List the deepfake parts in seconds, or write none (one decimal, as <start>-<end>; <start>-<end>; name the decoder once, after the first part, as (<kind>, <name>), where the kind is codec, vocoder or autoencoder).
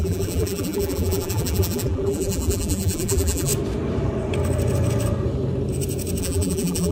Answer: 0.0-3.5 (vocoder, BigVGAN v2); 6.2-6.9